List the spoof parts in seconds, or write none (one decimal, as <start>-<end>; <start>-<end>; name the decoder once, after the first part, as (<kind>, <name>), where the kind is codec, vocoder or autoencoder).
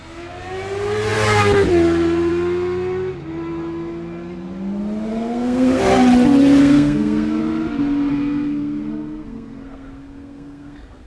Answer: 5.1-5.8 (codec, SNAC); 6.6-7.4; 8.1-11.1